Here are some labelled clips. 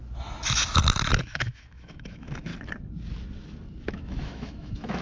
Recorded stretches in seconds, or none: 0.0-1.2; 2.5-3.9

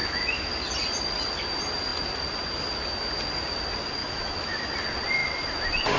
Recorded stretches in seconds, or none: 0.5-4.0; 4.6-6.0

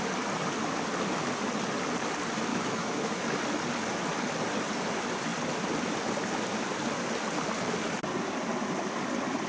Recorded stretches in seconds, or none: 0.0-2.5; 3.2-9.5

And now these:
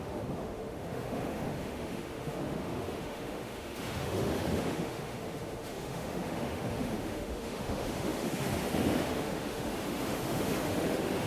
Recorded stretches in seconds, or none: none